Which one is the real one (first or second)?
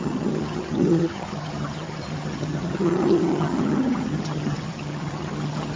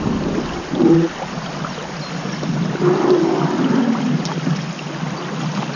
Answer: second